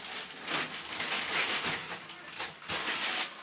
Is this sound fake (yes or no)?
no